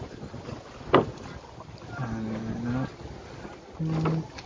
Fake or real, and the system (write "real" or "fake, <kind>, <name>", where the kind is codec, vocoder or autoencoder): real